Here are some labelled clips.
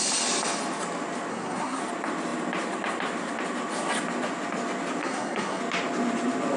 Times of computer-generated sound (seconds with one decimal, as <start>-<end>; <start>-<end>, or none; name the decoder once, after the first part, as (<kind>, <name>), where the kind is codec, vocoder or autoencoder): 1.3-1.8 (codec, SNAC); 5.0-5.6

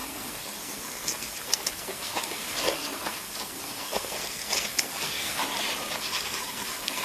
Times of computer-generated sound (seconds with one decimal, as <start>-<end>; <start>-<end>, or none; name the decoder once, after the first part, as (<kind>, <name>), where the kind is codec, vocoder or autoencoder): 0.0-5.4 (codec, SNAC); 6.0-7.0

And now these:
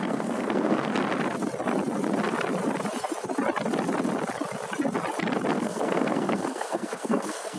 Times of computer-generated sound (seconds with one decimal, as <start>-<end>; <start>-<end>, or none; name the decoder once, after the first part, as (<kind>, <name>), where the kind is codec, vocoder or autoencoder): 0.0-0.9 (codec, SNAC); 5.5-7.6